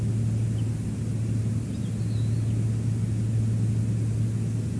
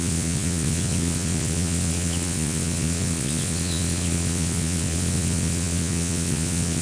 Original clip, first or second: first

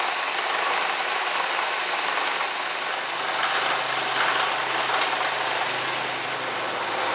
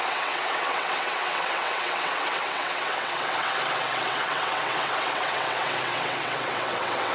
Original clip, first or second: first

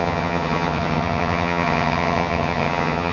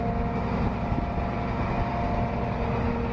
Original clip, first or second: second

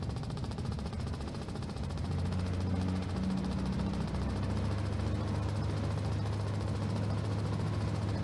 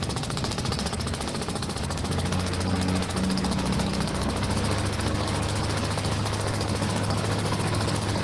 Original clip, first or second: first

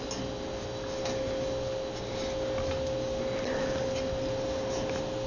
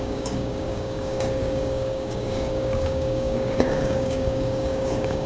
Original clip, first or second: first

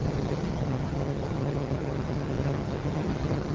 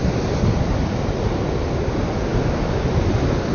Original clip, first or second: second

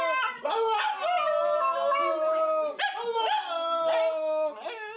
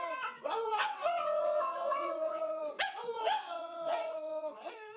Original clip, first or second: first